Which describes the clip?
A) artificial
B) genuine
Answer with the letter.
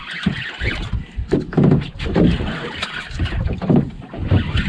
B